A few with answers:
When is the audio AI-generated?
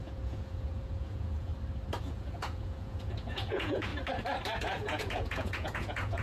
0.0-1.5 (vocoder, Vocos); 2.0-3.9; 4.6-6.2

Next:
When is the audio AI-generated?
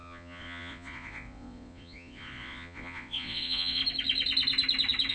0.0-3.8 (vocoder, Vocos)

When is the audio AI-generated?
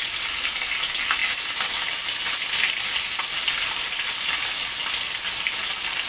none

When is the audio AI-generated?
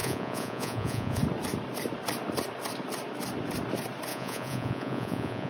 0.0-1.2 (vocoder, Vocos); 4.1-5.5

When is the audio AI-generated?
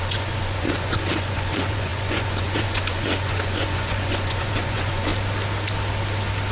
0.0-5.1 (vocoder, Vocos)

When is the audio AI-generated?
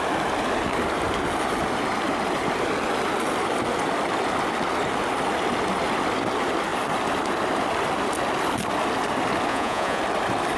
9.5-10.0 (vocoder, Vocos)